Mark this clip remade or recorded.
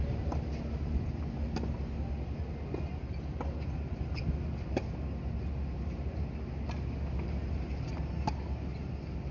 recorded